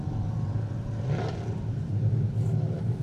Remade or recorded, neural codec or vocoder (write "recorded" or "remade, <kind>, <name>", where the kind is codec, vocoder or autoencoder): recorded